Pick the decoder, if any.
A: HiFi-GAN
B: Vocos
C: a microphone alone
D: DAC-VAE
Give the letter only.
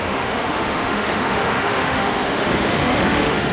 D